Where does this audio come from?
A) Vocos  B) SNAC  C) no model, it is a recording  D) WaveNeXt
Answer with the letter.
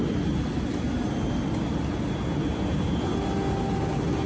C